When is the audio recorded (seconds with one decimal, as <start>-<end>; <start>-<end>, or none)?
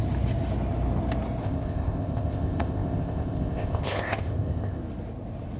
0.0-1.4; 4.8-5.6